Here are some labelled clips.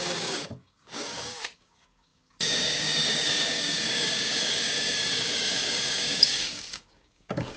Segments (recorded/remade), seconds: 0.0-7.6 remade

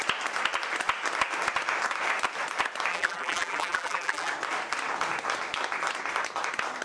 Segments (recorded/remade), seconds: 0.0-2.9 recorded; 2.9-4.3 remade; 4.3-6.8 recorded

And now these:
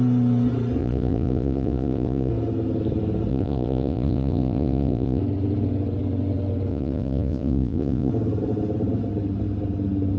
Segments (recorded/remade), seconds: 0.0-0.8 recorded; 0.8-2.3 remade; 2.3-3.3 recorded; 3.3-5.2 remade; 5.2-6.7 recorded; 6.7-8.1 remade; 8.1-10.2 recorded

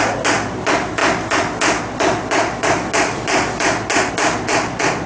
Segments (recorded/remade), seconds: 0.0-5.1 recorded

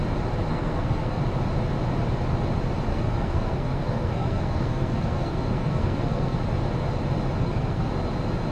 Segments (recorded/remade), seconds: 0.0-0.5 recorded; 0.5-1.2 remade; 1.2-2.9 recorded; 2.9-6.4 remade; 6.4-7.4 recorded; 7.4-7.9 remade; 7.9-8.5 recorded

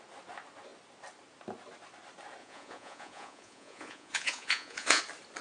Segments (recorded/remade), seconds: 0.0-2.4 recorded; 2.4-5.0 remade; 5.0-5.4 recorded